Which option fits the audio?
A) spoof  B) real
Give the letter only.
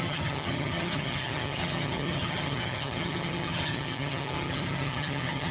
A